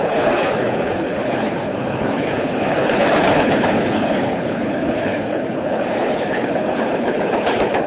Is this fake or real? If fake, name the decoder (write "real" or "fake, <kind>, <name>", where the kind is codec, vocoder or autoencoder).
fake, codec, HILCodec